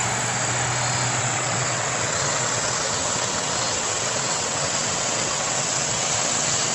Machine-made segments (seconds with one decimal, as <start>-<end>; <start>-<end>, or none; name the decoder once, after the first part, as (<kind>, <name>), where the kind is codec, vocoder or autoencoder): 1.2-6.7 (vocoder, WaveNeXt)